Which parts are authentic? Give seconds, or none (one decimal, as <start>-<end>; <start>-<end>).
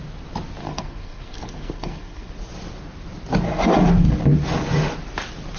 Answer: 0.0-0.6; 2.3-5.6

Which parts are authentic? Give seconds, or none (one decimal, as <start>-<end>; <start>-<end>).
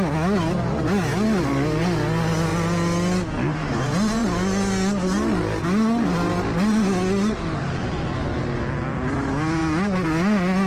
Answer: 0.0-10.7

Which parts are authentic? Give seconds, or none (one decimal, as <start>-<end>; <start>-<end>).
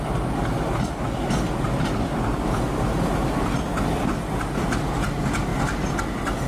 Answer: 0.0-6.5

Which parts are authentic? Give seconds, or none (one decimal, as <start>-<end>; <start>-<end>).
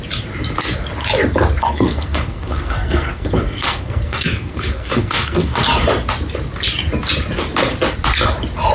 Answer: 0.0-1.6; 5.6-8.7